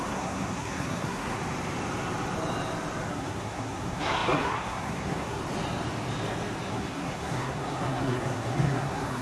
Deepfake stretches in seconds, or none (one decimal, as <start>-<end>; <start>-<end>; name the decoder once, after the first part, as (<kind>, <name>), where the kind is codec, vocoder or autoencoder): 0.0-1.4 (codec, SNAC); 3.1-5.4; 6.7-9.2